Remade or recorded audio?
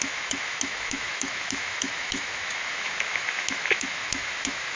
remade